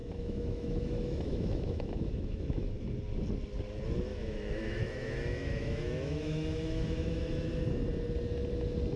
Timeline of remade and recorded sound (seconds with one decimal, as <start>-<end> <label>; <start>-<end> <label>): 0.0-2.7 remade; 2.7-4.1 recorded; 4.1-7.5 remade; 7.5-9.0 recorded